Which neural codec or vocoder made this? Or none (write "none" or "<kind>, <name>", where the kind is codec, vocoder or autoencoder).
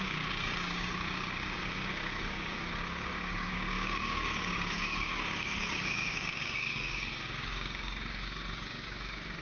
codec, DAC